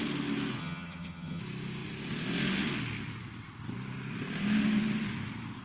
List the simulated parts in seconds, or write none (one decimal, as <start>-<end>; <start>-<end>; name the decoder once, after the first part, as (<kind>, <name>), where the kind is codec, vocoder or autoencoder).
0.6-1.4 (vocoder, HiFi-GAN)